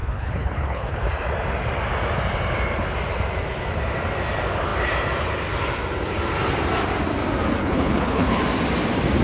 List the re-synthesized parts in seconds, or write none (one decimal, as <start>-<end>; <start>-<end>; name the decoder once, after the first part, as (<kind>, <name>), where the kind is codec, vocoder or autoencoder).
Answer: 0.0-1.0 (codec, HILCodec); 7.6-8.4